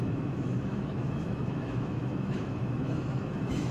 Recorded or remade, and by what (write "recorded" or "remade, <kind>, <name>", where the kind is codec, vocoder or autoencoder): remade, autoencoder, DAC-VAE